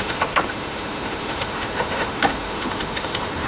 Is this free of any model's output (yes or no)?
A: no